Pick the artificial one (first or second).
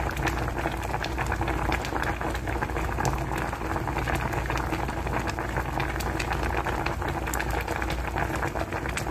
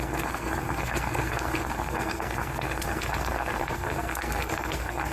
second